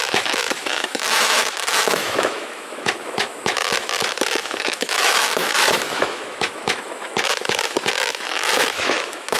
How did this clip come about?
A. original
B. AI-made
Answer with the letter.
B